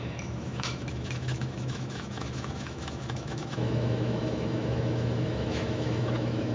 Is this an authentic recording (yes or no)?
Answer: no